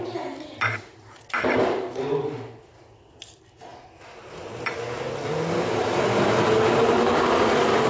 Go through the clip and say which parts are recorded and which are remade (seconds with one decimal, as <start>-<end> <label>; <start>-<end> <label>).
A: 0.0-7.9 recorded